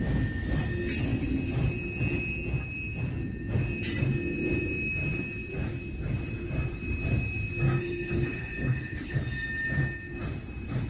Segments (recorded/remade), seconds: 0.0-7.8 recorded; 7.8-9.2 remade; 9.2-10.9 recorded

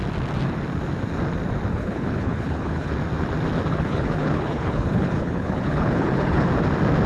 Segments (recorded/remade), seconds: 0.0-1.7 recorded; 1.7-2.9 remade; 2.9-3.7 recorded; 3.7-6.5 remade; 6.5-7.1 recorded

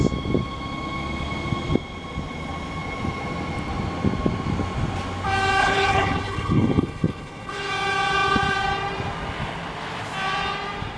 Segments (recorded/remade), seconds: 0.0-5.6 recorded; 5.6-7.7 remade; 7.7-11.0 recorded

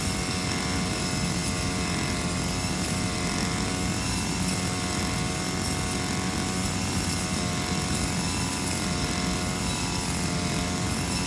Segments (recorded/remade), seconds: 0.0-11.3 recorded